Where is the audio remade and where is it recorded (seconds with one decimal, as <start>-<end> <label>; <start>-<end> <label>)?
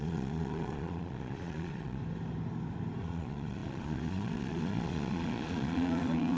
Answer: 0.0-2.0 remade; 2.0-3.0 recorded; 3.0-6.4 remade